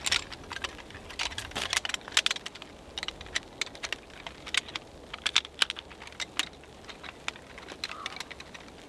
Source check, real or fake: real